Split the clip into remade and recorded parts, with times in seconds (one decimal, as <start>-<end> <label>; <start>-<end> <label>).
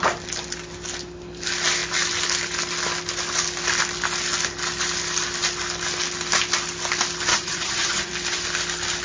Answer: 0.0-7.3 recorded; 7.3-8.1 remade; 8.1-9.0 recorded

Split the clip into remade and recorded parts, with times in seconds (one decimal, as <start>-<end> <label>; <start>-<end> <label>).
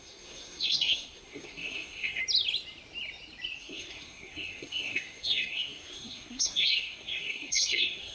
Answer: 0.0-2.2 remade; 2.2-3.6 recorded; 3.6-8.1 remade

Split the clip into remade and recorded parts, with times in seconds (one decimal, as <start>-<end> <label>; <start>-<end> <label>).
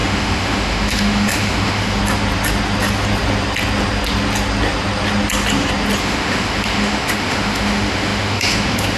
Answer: 0.0-2.0 remade; 2.0-6.0 recorded; 6.0-9.0 remade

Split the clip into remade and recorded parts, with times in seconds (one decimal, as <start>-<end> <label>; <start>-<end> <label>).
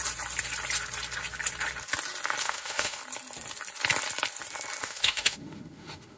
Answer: 0.0-2.4 recorded; 2.4-3.0 remade; 3.0-4.8 recorded; 4.8-6.2 remade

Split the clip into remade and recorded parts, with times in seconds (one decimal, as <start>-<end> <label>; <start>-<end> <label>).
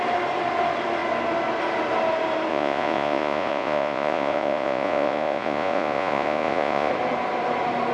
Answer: 0.0-2.5 recorded; 2.5-6.9 remade; 6.9-7.9 recorded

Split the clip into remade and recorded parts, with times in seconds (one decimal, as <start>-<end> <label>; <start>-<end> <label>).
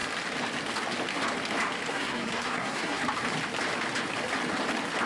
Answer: 0.0-1.9 recorded; 1.9-3.0 remade; 3.0-5.1 recorded